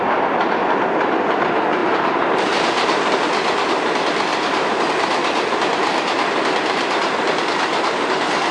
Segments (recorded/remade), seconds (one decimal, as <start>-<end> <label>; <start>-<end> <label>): 0.0-1.8 recorded; 1.8-3.1 remade; 3.1-4.3 recorded; 4.3-4.9 remade; 4.9-8.5 recorded

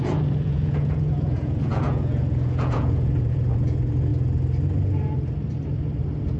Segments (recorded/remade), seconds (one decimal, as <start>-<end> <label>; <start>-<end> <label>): 0.0-4.1 remade; 4.1-6.4 recorded

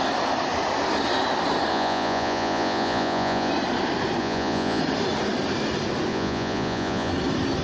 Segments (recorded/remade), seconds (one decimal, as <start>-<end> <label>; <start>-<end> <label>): 0.0-1.7 recorded; 1.7-3.5 remade; 3.5-4.2 recorded; 4.2-4.8 remade; 4.8-6.1 recorded; 6.1-7.1 remade; 7.1-7.6 recorded

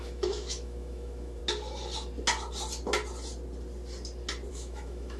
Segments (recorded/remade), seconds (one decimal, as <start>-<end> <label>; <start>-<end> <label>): 0.0-1.4 remade; 1.4-4.5 recorded; 4.5-5.2 remade

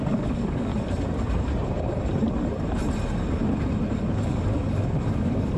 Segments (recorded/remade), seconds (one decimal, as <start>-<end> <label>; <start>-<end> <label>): 0.0-0.7 remade; 0.7-4.1 recorded; 4.1-5.6 remade